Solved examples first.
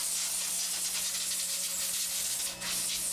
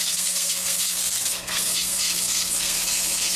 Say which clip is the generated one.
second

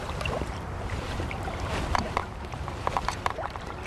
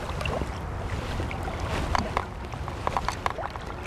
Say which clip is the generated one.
first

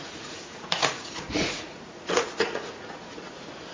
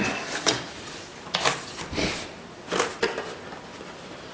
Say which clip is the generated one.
first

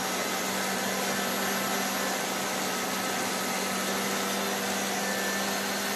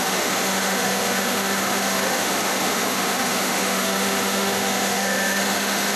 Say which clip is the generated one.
second